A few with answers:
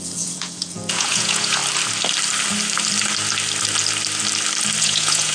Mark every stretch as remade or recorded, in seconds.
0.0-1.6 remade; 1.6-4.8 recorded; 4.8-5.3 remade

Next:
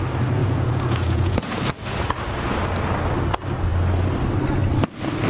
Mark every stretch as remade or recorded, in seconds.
0.0-0.4 recorded; 0.4-1.6 remade; 1.6-5.3 recorded

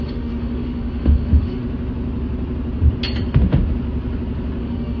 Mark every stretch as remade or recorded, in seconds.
0.0-1.6 remade; 1.6-4.6 recorded; 4.6-5.0 remade

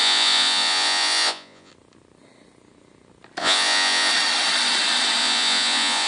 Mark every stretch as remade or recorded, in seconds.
0.0-1.7 remade; 1.7-3.4 recorded; 3.4-4.1 remade; 4.1-5.2 recorded; 5.2-6.1 remade

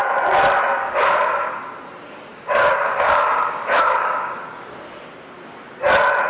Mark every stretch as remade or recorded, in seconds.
0.0-0.8 recorded; 0.8-1.5 remade; 1.5-2.3 recorded; 2.3-4.4 remade; 4.4-6.3 recorded

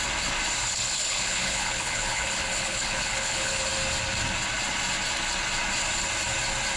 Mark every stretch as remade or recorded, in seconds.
0.0-0.6 recorded; 0.6-3.7 remade; 3.7-6.8 recorded